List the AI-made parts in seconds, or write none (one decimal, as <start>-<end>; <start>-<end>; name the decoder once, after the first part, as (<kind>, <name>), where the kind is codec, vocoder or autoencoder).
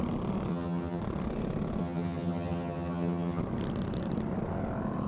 0.5-1.0 (vocoder, HiFi-GAN); 1.8-3.4